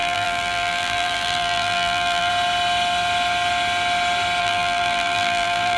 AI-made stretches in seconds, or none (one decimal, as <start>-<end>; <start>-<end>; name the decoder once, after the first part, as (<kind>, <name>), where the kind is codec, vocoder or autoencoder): 0.0-2.3 (vocoder, BigVGAN v2); 4.4-5.8